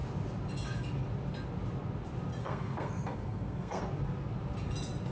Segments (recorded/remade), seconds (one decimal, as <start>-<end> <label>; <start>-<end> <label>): 0.0-2.4 recorded; 2.4-3.8 remade; 3.8-5.1 recorded